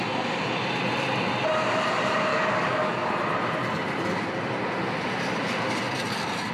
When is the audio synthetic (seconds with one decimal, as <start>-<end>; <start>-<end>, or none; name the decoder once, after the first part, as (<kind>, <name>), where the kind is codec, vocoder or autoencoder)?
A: 2.3-3.1 (codec, DAC)